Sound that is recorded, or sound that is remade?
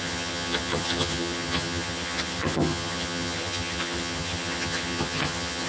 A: remade